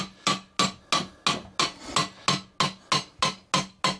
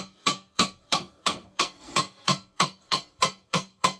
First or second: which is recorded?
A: first